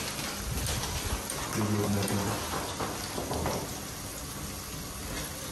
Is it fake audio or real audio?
real